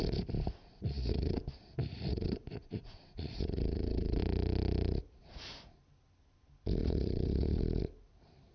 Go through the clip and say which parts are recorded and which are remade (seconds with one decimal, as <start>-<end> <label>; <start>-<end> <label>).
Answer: 0.0-0.6 recorded; 0.6-1.4 remade; 1.4-1.9 recorded; 1.9-4.2 remade; 4.2-6.8 recorded; 6.8-7.6 remade; 7.6-8.5 recorded